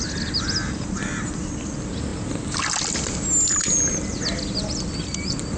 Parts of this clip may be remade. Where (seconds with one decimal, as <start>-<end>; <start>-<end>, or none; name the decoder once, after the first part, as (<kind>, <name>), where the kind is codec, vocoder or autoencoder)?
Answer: none